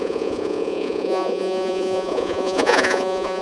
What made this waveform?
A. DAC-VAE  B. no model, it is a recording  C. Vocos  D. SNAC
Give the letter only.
C